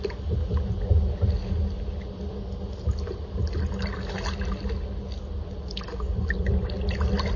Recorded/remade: recorded